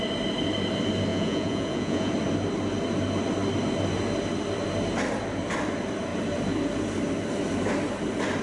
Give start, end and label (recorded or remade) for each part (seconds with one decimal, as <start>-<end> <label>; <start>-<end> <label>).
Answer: 0.0-1.1 recorded; 1.1-2.1 remade; 2.1-8.4 recorded